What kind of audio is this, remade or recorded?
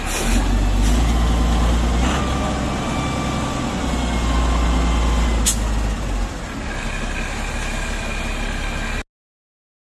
recorded